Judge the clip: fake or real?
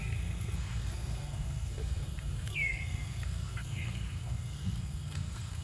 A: fake